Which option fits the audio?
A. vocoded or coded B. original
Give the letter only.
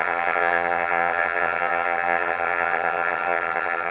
A